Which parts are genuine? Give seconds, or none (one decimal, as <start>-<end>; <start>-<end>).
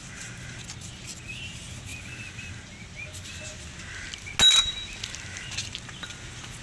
0.0-5.6; 6.1-6.6